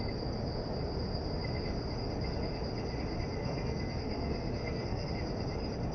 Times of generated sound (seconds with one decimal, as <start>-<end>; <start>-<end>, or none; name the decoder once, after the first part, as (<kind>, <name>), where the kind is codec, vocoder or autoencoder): 3.4-5.1 (codec, SNAC)